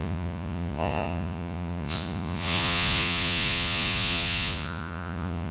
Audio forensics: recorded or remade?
remade